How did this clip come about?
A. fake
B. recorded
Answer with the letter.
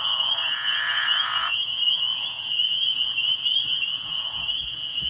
A